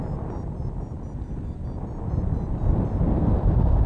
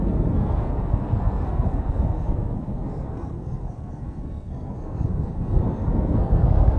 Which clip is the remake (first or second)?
second